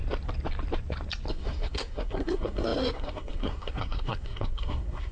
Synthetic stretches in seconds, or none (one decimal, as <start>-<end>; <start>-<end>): 1.3-5.1